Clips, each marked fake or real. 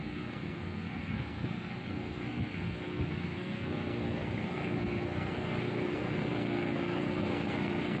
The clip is fake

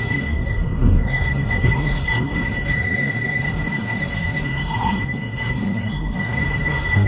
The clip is fake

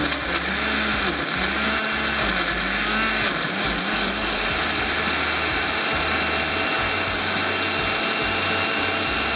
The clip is real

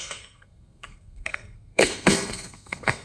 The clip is fake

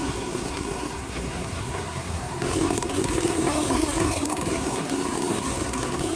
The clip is fake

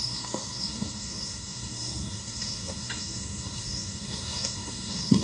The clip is fake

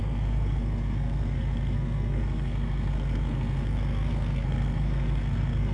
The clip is fake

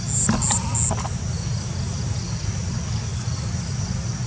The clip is real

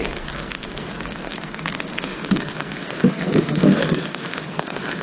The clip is fake